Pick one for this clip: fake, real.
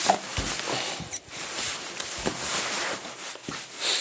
real